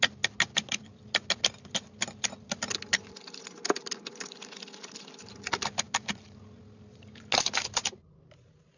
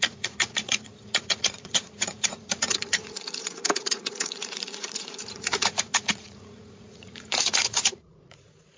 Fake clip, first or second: second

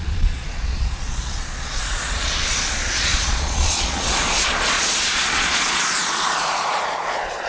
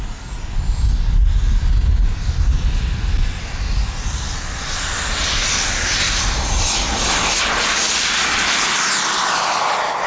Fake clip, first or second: first